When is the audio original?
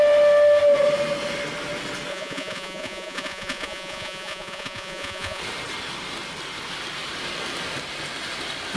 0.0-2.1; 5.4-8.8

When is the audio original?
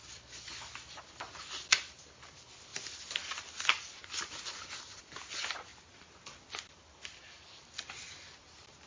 0.0-8.9